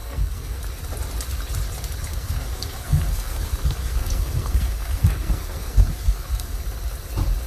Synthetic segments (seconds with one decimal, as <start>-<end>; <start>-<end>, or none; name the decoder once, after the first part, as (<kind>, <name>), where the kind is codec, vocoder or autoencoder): 0.0-0.6 (codec, SNAC); 2.1-6.6